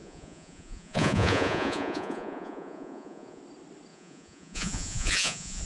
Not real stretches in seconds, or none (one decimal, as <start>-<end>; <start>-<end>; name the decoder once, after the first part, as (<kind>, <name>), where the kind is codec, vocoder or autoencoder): 0.0-3.4 (vocoder, Vocos); 3.9-5.6